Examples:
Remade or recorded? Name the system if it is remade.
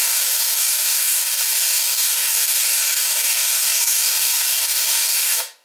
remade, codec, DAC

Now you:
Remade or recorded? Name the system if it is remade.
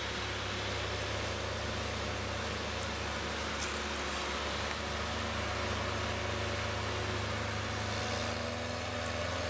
recorded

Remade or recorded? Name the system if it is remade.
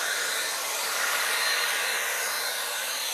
remade, codec, DAC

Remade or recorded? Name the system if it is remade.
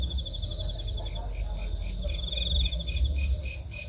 recorded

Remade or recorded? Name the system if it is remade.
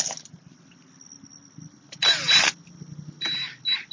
recorded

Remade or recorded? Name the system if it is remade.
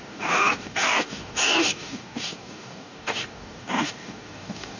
remade, codec, DAC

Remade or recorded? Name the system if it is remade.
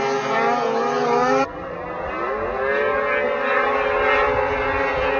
recorded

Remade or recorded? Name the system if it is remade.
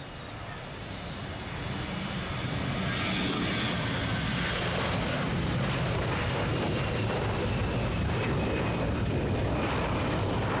recorded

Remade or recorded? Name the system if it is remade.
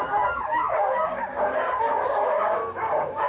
remade, codec, DAC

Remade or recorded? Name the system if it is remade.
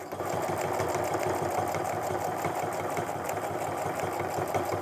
recorded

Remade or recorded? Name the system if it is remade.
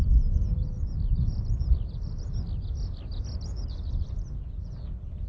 recorded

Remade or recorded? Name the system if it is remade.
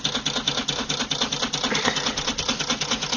recorded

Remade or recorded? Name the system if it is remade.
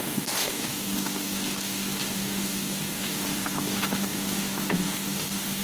remade, codec, DAC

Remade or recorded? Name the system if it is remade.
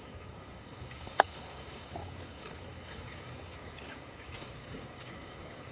remade, codec, DAC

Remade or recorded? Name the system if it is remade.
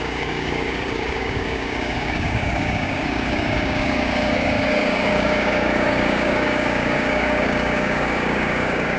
remade, codec, DAC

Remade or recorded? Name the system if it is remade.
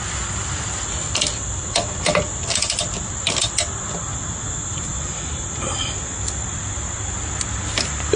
recorded